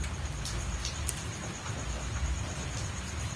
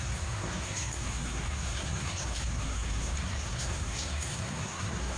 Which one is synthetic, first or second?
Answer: second